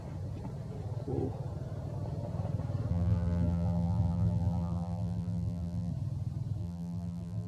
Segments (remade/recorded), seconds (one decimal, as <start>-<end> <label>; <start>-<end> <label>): 0.0-2.9 recorded; 2.9-5.9 remade; 5.9-6.6 recorded; 6.6-7.5 remade